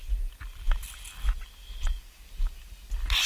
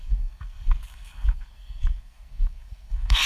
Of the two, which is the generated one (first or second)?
second